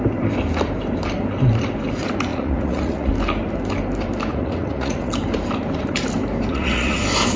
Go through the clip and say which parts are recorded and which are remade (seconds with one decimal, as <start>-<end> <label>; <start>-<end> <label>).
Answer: 0.0-2.3 recorded; 2.3-3.1 remade; 3.1-4.3 recorded; 4.3-5.1 remade; 5.1-6.5 recorded; 6.5-7.0 remade; 7.0-7.4 recorded